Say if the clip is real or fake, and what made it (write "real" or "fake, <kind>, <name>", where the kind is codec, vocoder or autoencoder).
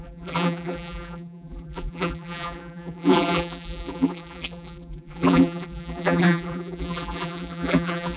fake, vocoder, BigVGAN v2